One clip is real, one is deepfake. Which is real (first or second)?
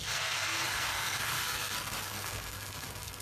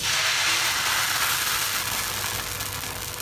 second